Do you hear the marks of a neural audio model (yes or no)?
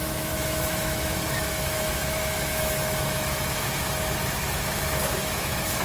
yes